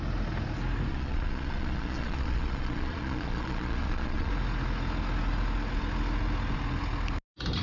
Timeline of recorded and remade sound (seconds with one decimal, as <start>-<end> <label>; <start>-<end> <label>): 0.0-0.9 recorded; 0.9-4.3 remade; 4.3-7.6 recorded